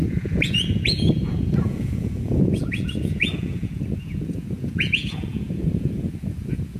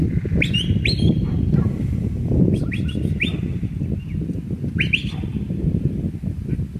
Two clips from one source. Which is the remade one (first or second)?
first